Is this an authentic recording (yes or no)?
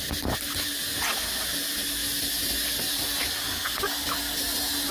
yes